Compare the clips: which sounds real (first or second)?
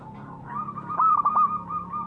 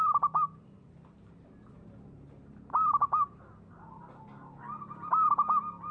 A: second